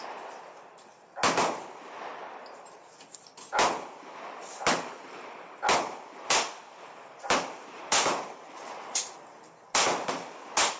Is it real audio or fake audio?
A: real